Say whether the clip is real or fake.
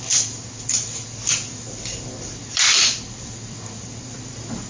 fake